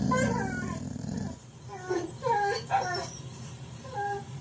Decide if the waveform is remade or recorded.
remade